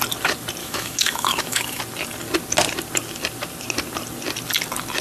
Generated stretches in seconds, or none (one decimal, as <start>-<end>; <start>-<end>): 0.6-1.8